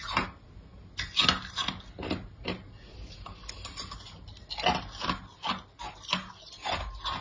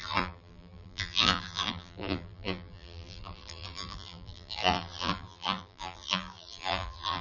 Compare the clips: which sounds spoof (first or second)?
second